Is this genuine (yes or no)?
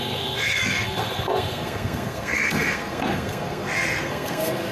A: no